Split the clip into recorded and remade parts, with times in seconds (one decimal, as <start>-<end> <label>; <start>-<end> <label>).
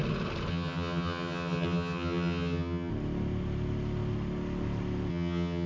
0.0-0.5 recorded; 0.5-2.9 remade; 2.9-5.1 recorded; 5.1-5.7 remade